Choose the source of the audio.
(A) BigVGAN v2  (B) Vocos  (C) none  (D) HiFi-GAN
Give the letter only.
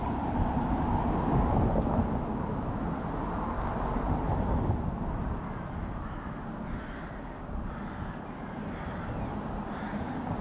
C